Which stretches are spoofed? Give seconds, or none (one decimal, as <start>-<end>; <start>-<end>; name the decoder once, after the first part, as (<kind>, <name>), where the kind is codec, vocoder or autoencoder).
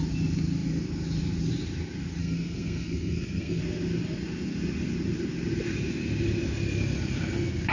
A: 2.2-3.6 (codec, SNAC)